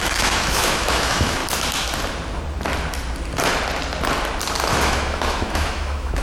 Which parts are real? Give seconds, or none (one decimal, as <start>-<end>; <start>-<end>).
1.4-4.7